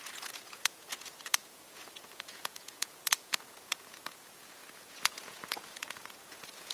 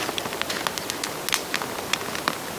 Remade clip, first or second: first